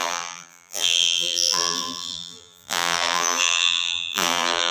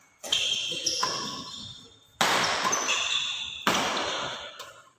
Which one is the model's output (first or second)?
first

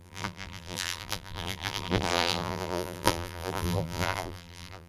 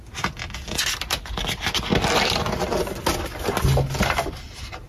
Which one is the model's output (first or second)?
first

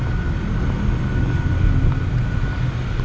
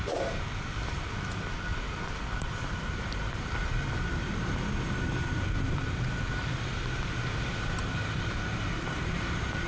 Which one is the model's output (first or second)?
second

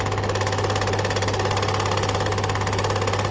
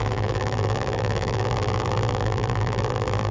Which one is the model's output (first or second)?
second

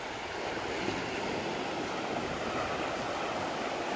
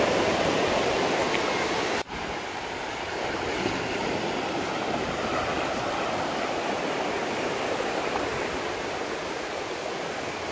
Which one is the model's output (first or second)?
second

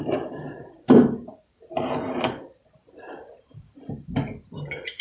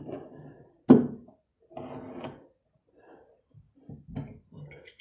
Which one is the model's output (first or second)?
first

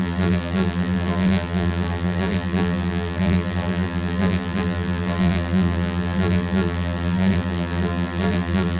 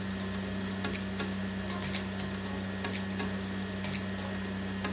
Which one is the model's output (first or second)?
first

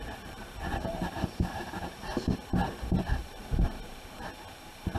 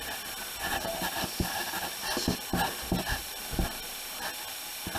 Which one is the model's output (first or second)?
first